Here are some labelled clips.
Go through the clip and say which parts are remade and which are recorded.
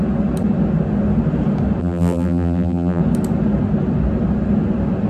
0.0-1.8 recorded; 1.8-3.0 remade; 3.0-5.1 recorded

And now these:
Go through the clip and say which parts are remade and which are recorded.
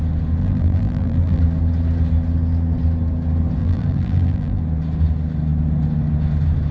0.0-0.4 recorded; 0.4-1.4 remade; 1.4-3.6 recorded; 3.6-4.6 remade; 4.6-6.7 recorded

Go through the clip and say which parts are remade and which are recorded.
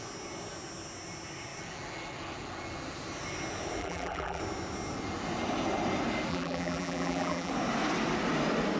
0.0-3.8 recorded; 3.8-4.4 remade; 4.4-6.3 recorded; 6.3-7.5 remade; 7.5-8.8 recorded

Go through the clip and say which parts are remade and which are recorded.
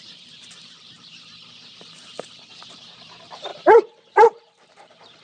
0.0-3.5 remade; 3.5-4.7 recorded; 4.7-5.2 remade